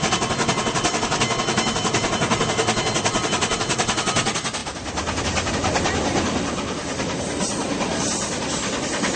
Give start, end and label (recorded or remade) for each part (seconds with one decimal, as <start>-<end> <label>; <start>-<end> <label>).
0.0-9.2 recorded